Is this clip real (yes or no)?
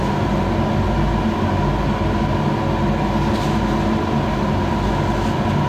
yes